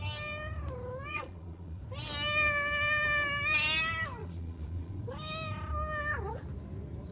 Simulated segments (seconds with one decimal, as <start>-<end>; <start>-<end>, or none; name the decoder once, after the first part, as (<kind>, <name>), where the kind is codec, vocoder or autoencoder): 1.1-1.8 (vocoder, Vocos); 4.2-5.0